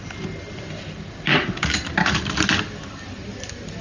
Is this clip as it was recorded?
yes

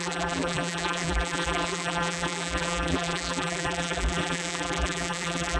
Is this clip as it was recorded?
no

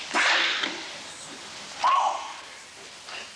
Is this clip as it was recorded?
yes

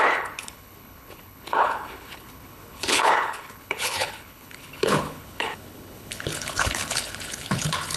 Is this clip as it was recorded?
no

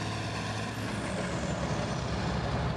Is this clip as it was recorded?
yes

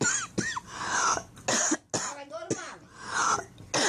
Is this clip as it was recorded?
yes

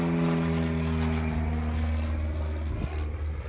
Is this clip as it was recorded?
yes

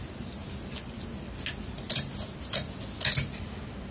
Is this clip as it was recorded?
yes